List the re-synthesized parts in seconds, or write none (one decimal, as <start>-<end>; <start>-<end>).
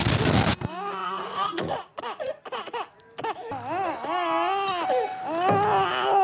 1.0-2.3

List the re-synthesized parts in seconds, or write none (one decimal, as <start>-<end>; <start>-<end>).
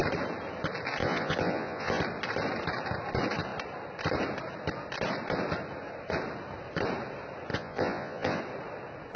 1.0-2.0; 7.5-8.4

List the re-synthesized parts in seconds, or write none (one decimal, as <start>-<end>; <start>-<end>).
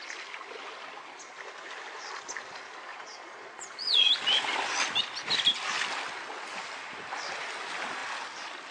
2.9-4.1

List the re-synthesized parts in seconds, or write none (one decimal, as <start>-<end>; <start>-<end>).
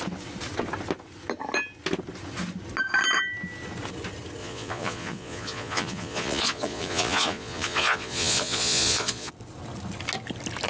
4.4-9.3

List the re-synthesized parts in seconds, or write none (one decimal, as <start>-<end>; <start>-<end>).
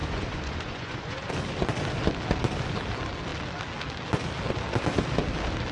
0.0-1.3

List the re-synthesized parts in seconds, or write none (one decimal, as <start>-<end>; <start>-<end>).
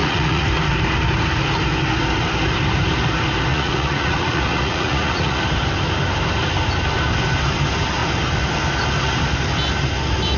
0.0-0.5; 3.5-5.4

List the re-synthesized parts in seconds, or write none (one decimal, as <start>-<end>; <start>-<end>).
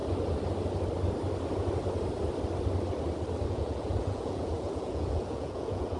3.5-6.0